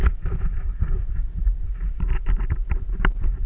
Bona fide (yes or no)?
yes